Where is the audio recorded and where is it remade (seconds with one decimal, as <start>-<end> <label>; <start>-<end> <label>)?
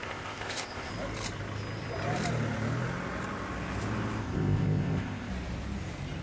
0.0-0.9 remade; 0.9-4.2 recorded; 4.2-5.3 remade; 5.3-6.2 recorded